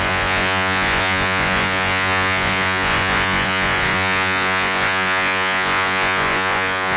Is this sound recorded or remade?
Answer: remade